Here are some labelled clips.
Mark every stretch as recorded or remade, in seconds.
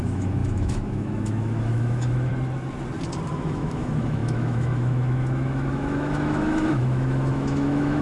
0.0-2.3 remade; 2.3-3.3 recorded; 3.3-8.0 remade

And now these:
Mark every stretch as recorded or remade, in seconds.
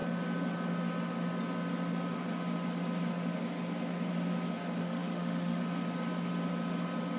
0.0-4.8 recorded; 4.8-5.6 remade; 5.6-7.2 recorded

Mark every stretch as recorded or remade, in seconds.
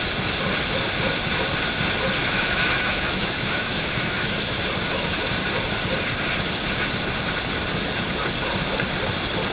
0.0-2.2 recorded; 2.2-4.6 remade; 4.6-9.5 recorded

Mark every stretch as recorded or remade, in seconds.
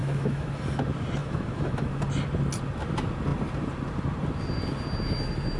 0.0-0.5 remade; 0.5-1.2 recorded; 1.2-1.9 remade; 1.9-5.6 recorded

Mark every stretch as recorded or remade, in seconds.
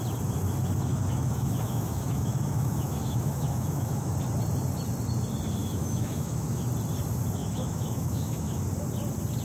0.0-0.9 recorded; 0.9-4.1 remade; 4.1-5.6 recorded; 5.6-6.6 remade; 6.6-7.4 recorded; 7.4-8.6 remade; 8.6-9.4 recorded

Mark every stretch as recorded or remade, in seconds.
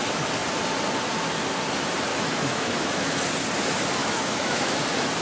0.0-2.1 recorded; 2.1-3.2 remade; 3.2-4.0 recorded; 4.0-4.8 remade; 4.8-5.2 recorded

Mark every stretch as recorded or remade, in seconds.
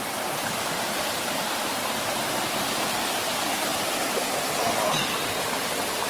0.0-6.1 recorded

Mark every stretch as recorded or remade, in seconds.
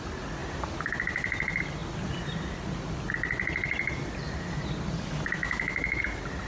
0.0-5.4 recorded; 5.4-6.0 remade; 6.0-6.5 recorded